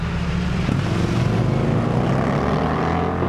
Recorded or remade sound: recorded